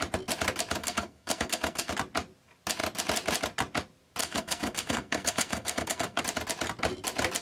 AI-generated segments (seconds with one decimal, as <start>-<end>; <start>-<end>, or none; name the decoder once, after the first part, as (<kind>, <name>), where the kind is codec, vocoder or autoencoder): 0.8-1.9 (codec, SNAC); 4.2-6.2